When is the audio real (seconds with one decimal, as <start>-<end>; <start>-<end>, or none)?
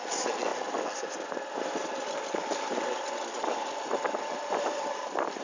0.0-5.4